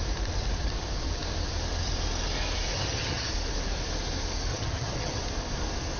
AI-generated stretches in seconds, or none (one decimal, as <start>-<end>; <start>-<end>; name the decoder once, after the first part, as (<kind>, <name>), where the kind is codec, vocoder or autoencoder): 2.7-3.3 (vocoder, HiFi-GAN); 4.5-5.2